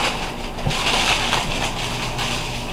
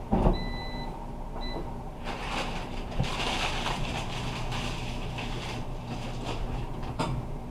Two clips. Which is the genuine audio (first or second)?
first